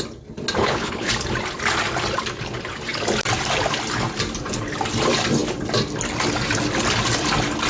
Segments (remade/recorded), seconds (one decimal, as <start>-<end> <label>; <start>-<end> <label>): 0.0-0.6 recorded; 0.6-1.1 remade; 1.1-7.7 recorded